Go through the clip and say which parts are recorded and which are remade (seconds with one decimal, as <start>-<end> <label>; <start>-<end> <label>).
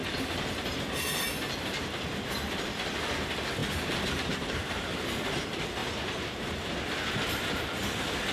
0.0-3.6 recorded; 3.6-5.1 remade; 5.1-5.8 recorded; 5.8-6.7 remade; 6.7-8.3 recorded